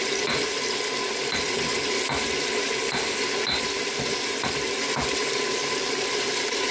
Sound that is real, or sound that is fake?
fake